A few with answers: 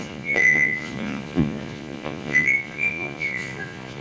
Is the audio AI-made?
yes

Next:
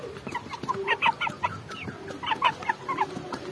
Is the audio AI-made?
no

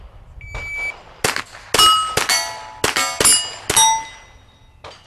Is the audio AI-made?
no